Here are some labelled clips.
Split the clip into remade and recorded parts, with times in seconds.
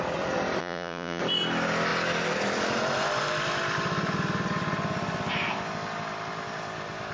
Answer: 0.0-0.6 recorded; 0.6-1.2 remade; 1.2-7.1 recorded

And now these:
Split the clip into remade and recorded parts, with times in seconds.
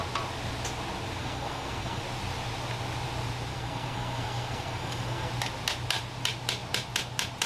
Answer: 0.0-1.2 recorded; 1.2-2.0 remade; 2.0-3.5 recorded; 3.5-5.3 remade; 5.3-7.5 recorded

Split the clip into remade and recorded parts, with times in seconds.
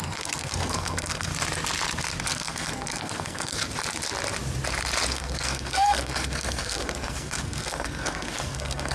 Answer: 0.0-1.3 remade; 1.3-2.2 recorded; 2.2-3.6 remade; 3.6-5.1 recorded; 5.1-8.9 remade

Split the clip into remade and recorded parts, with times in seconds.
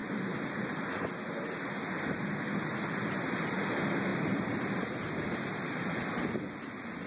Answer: 0.0-4.1 recorded; 4.1-5.9 remade; 5.9-7.1 recorded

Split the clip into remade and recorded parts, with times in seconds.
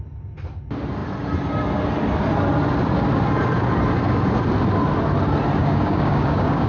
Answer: 0.0-5.6 recorded; 5.6-6.7 remade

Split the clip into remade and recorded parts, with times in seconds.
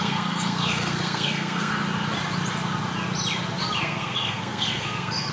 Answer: 0.0-1.7 remade; 1.7-3.8 recorded; 3.8-5.3 remade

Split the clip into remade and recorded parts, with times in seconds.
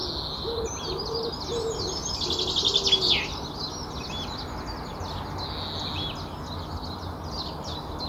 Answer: 0.0-8.1 recorded